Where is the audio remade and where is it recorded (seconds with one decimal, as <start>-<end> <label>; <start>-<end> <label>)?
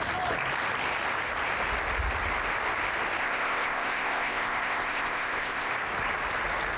0.0-3.2 recorded; 3.2-5.7 remade; 5.7-6.8 recorded